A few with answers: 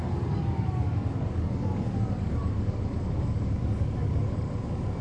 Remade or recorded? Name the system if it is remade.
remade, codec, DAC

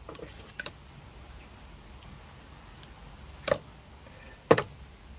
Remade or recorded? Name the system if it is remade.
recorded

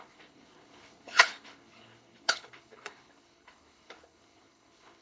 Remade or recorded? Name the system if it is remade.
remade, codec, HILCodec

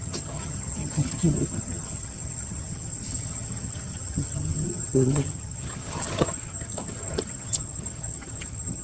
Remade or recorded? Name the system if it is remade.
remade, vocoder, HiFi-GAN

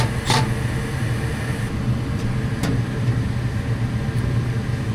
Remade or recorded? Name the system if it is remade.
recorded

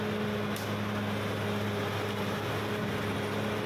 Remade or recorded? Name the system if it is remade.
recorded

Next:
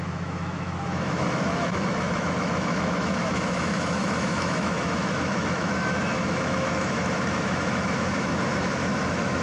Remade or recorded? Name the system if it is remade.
remade, autoencoder, DAC-VAE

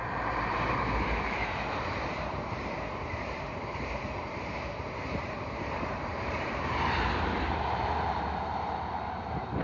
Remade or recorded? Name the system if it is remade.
remade, vocoder, BigVGAN v2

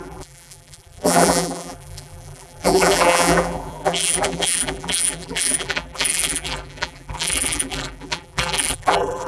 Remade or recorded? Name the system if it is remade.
remade, vocoder, BigVGAN v2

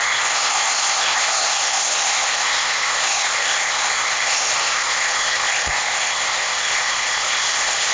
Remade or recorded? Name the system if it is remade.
remade, codec, ZipCodec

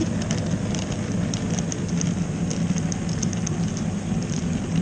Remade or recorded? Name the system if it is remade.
recorded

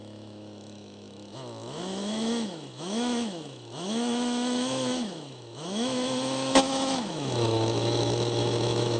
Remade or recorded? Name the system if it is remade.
remade, autoencoder, DAC-VAE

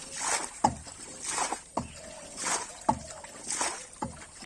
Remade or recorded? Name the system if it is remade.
recorded